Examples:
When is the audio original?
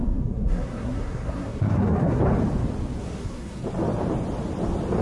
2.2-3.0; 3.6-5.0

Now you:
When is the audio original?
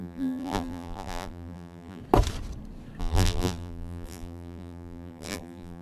2.0-3.0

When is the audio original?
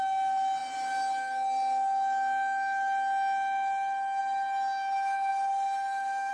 0.0-6.3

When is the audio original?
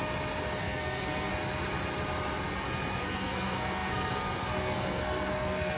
0.0-0.6; 1.3-3.0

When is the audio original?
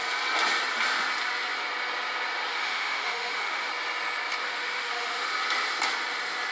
0.0-2.5; 3.7-4.4; 5.3-6.5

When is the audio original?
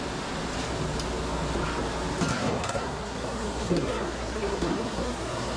0.0-2.3